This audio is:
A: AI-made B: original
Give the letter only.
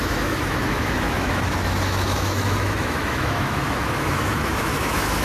A